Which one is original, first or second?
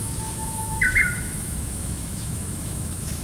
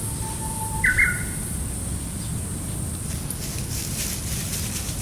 second